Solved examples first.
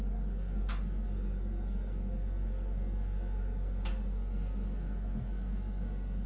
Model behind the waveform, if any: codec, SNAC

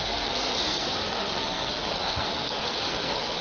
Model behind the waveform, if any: codec, SNAC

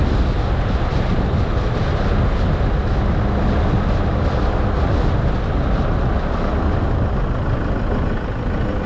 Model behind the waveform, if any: none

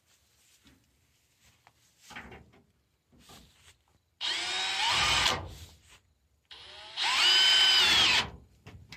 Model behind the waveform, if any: none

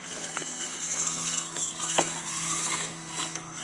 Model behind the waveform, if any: codec, SNAC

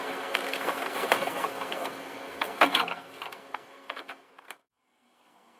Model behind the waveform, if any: codec, SNAC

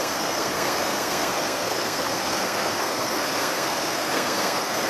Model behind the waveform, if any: codec, SNAC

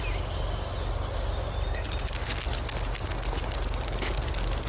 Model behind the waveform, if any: none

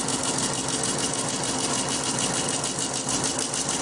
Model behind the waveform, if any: none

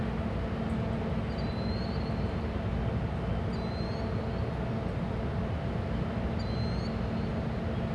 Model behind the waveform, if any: none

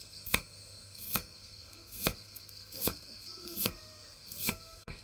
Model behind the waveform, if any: codec, SNAC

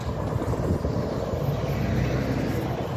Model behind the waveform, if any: none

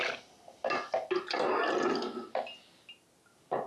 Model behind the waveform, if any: none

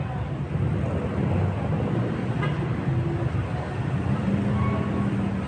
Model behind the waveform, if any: none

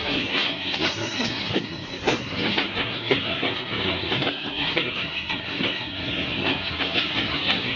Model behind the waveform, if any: codec, SNAC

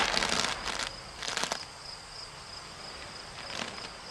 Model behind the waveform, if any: none